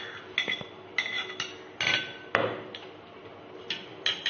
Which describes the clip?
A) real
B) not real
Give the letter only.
A